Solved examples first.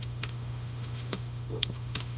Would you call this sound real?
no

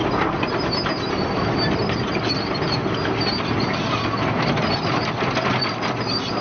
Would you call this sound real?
yes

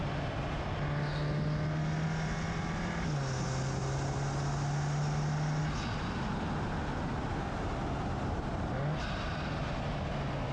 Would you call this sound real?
yes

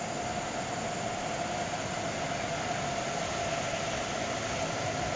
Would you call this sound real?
yes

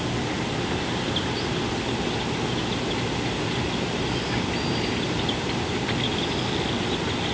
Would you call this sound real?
yes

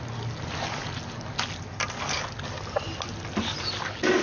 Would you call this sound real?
yes